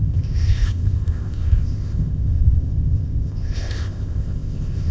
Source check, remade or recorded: remade